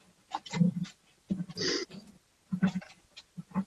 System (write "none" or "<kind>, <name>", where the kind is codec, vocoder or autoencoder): none